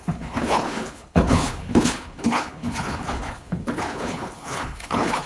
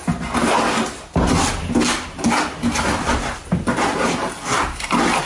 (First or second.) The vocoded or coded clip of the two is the first